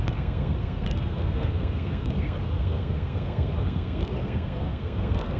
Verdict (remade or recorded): remade